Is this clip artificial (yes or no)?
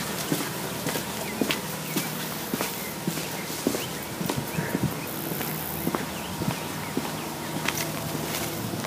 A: no